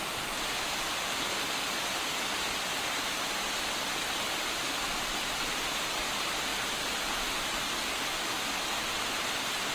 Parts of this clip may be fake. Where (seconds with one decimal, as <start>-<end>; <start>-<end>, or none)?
none